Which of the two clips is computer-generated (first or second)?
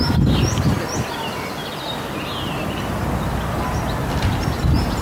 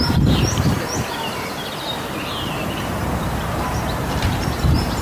second